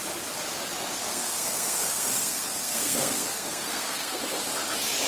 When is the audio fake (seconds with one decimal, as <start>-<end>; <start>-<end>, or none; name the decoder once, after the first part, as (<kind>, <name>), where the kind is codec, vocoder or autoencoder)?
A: 1.1-4.2 (codec, SNAC)